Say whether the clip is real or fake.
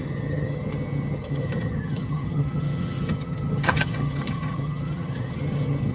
fake